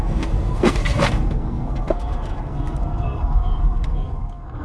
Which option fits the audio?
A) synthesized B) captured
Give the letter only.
A